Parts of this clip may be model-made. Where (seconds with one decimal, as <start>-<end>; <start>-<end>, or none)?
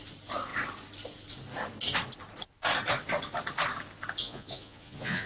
4.2-5.3